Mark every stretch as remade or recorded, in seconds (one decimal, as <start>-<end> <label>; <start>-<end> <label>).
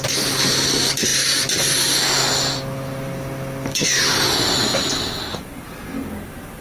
0.0-6.6 recorded